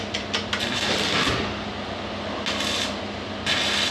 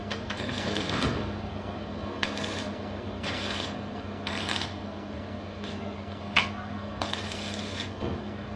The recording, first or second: first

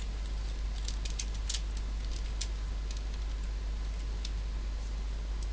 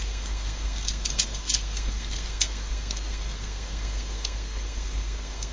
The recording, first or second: first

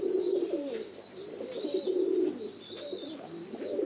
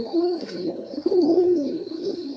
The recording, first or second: first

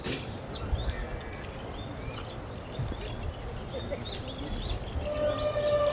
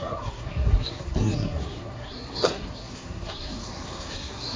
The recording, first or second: first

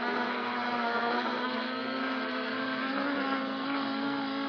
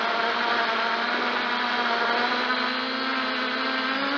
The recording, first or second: second